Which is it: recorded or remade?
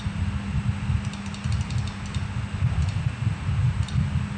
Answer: recorded